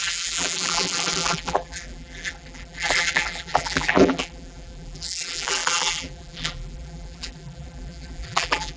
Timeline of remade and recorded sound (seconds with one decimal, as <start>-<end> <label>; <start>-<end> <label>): 0.0-8.8 remade